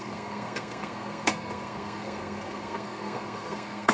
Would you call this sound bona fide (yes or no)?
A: no